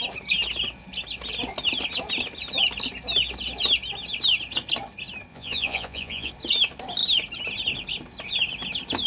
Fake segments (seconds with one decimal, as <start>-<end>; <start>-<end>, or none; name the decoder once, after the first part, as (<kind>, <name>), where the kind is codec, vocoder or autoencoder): 5.3-6.3 (vocoder, Vocos)